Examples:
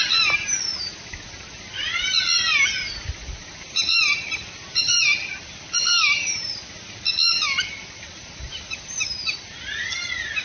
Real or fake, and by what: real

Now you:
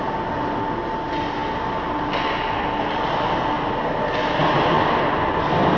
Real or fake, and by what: real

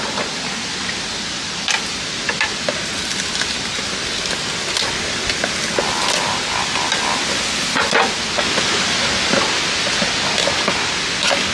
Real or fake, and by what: real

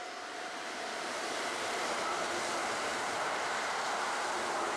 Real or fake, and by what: fake, vocoder, BigVGAN v2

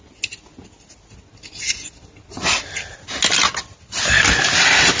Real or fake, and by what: real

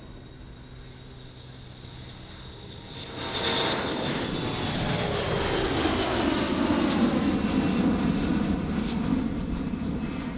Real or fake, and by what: real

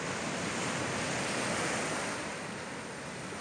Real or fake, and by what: real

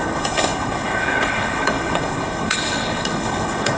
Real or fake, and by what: fake, codec, HILCodec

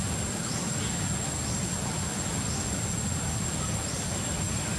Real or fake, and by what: real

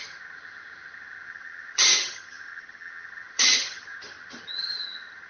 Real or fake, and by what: fake, vocoder, HiFi-GAN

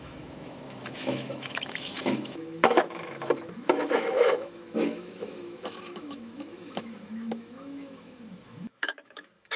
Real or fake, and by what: fake, autoencoder, DAC-VAE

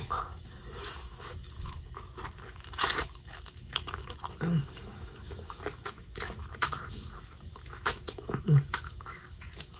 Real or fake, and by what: fake, autoencoder, DAC-VAE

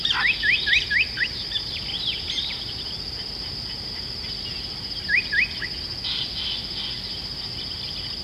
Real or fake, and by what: real